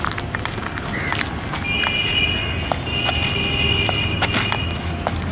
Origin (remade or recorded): recorded